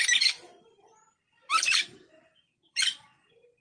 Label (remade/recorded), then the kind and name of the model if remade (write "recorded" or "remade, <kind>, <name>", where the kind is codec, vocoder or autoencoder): remade, vocoder, BigVGAN v2